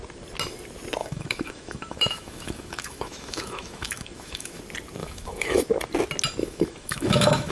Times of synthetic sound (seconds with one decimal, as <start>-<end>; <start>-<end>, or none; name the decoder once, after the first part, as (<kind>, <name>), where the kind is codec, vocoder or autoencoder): 1.0-4.6 (autoencoder, DAC-VAE); 5.0-5.6; 6.4-7.5